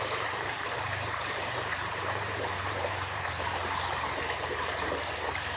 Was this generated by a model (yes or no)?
yes